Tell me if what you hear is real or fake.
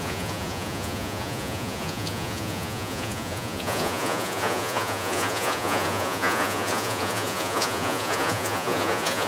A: fake